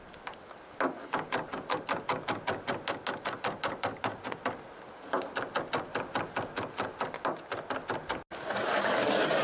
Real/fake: real